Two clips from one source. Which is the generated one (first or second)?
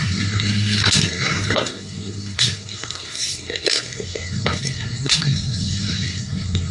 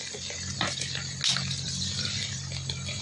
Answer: first